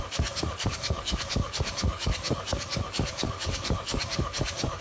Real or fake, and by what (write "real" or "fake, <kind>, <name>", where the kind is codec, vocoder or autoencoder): fake, codec, DAC